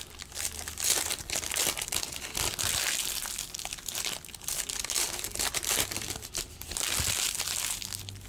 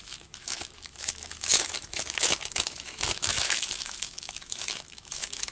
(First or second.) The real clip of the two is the first